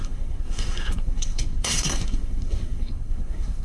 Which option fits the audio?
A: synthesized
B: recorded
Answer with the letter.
A